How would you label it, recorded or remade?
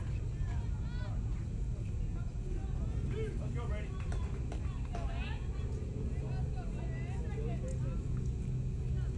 recorded